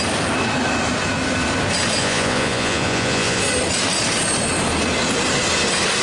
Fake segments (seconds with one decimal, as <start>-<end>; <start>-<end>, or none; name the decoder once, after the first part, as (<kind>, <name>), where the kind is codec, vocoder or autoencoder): 2.0-3.4 (vocoder, Vocos)